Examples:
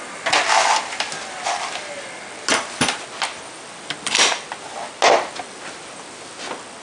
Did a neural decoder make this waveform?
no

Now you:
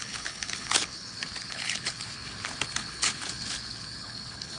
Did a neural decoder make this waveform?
yes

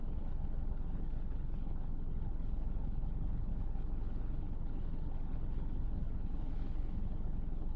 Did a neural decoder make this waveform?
yes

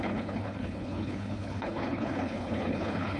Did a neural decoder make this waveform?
yes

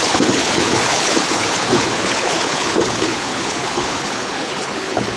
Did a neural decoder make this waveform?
yes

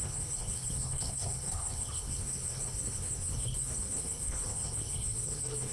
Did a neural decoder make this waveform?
yes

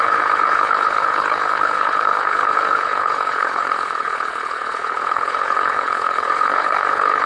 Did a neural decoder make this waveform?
yes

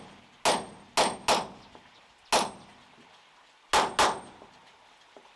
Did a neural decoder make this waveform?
no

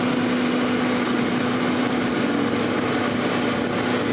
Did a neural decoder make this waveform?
no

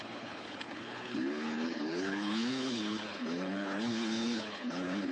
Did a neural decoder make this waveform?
yes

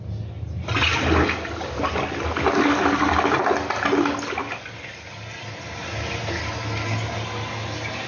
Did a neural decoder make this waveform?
no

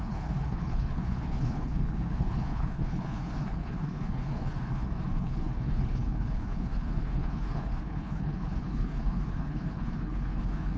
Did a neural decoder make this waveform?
yes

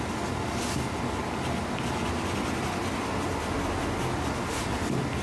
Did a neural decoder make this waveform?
no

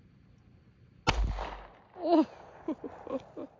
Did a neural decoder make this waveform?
no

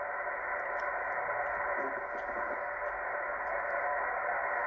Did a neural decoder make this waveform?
no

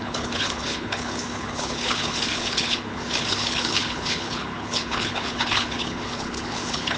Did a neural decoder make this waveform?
yes